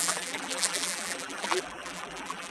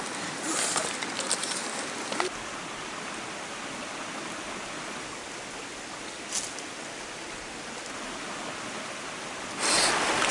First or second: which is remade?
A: first